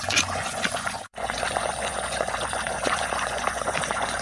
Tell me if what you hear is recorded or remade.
remade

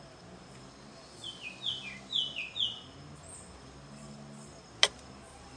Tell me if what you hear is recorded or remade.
recorded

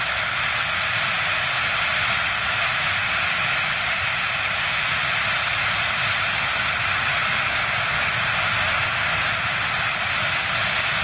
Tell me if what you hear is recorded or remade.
recorded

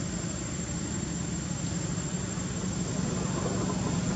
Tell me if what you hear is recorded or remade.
recorded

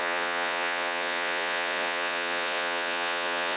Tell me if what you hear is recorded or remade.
remade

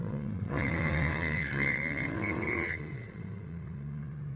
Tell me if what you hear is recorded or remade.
remade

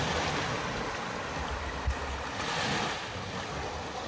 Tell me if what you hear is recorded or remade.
recorded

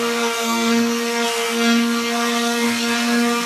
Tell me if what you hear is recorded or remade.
remade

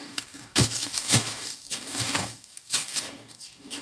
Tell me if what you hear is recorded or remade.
remade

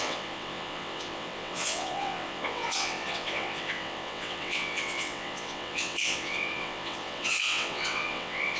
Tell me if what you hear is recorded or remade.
remade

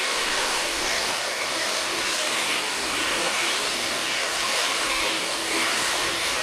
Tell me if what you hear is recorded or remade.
remade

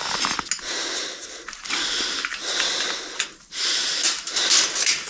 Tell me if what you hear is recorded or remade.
recorded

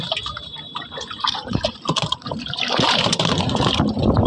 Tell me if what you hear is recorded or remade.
remade